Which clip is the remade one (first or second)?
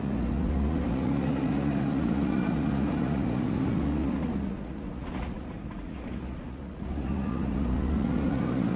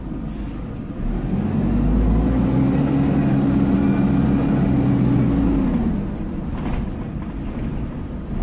first